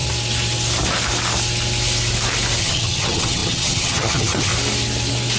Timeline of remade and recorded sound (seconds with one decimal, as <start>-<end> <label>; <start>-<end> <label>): 0.0-2.6 recorded; 2.6-4.5 remade; 4.5-5.4 recorded